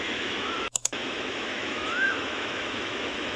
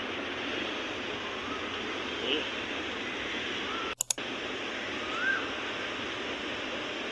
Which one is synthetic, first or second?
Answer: first